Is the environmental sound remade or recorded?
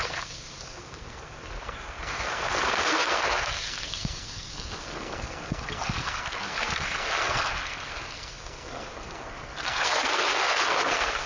remade